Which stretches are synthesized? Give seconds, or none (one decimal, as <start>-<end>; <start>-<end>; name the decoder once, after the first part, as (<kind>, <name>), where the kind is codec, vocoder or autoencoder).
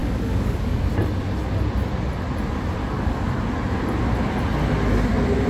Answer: 0.0-0.9 (codec, DAC); 2.8-3.4